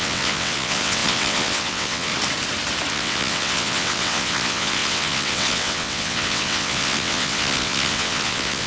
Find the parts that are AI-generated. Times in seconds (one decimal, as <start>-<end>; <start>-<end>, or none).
0.0-2.1; 2.9-8.7